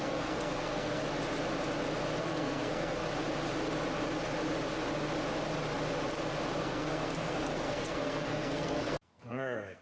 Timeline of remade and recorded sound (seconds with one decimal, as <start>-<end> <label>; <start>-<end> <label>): 0.0-1.0 remade; 1.0-2.2 recorded; 2.2-3.0 remade; 3.0-6.6 recorded; 6.6-9.8 remade